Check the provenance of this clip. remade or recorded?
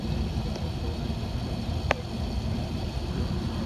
recorded